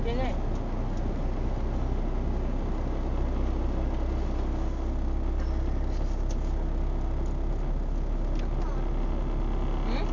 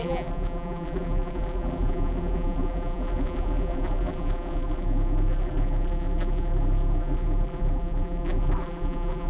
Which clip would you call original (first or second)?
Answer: first